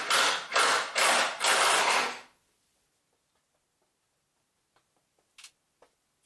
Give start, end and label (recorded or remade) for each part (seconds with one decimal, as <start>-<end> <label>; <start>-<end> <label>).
0.0-6.3 recorded

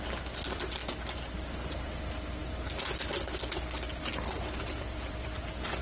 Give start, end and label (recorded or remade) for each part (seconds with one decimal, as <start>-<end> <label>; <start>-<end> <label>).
0.0-0.8 remade; 0.8-1.4 recorded; 1.4-2.4 remade; 2.4-4.0 recorded; 4.0-5.8 remade

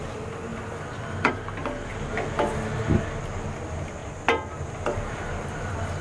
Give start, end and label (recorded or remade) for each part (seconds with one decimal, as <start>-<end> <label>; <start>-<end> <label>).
0.0-0.5 remade; 0.5-1.3 recorded; 1.3-1.9 remade; 1.9-3.2 recorded; 3.2-4.0 remade; 4.0-5.1 recorded; 5.1-6.0 remade

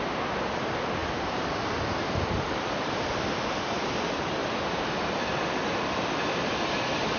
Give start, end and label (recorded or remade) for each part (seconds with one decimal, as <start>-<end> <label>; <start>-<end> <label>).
0.0-4.4 recorded; 4.4-5.1 remade; 5.1-7.2 recorded